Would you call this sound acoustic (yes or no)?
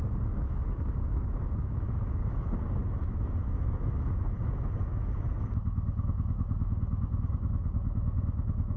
no